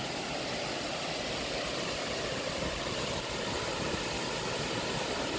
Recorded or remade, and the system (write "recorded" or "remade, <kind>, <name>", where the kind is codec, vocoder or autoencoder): recorded